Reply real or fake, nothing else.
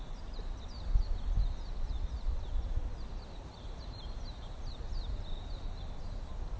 real